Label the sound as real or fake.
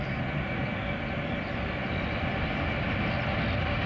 real